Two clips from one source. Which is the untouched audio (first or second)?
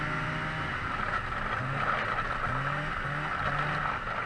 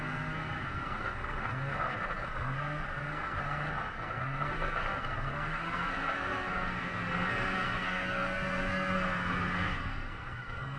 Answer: first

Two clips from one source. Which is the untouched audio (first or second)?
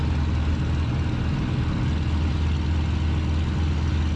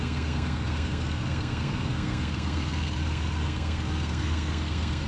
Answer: first